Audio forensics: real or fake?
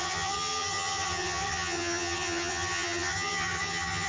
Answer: fake